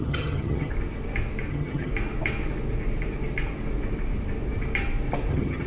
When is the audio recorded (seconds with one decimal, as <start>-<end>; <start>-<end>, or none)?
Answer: 0.7-1.5; 1.9-5.3